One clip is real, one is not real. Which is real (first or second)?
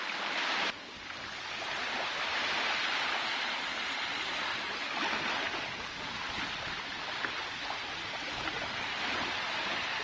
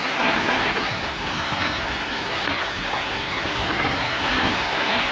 first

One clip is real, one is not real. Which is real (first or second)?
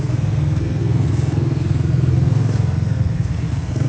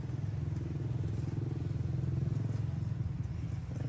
second